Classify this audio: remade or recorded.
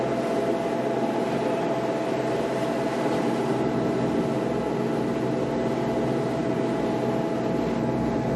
recorded